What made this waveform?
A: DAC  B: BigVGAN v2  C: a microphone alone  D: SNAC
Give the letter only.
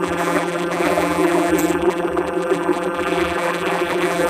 B